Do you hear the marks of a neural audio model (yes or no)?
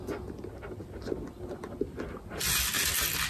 no